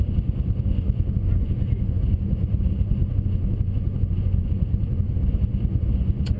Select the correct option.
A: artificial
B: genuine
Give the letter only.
A